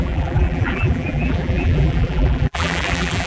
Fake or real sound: fake